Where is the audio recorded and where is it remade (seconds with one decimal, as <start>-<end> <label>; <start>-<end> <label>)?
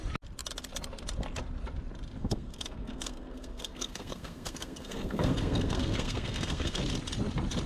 0.0-2.2 recorded; 2.2-6.8 remade; 6.8-7.7 recorded